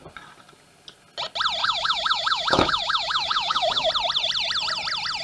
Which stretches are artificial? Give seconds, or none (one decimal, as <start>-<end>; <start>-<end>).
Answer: 1.6-3.9